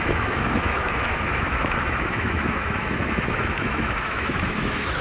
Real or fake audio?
fake